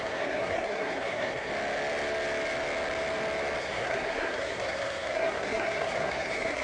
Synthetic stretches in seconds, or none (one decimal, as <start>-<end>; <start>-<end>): 0.0-1.5; 3.6-6.6